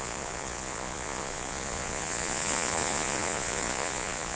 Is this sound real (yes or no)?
no